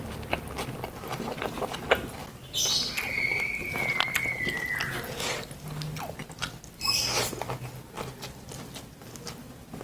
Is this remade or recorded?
recorded